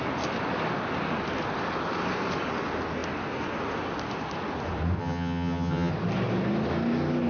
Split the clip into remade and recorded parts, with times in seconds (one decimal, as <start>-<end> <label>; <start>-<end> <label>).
0.0-5.0 recorded; 5.0-5.9 remade; 5.9-7.3 recorded